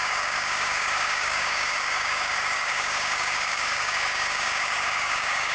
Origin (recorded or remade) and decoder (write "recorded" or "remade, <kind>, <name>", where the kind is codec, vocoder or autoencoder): remade, codec, DAC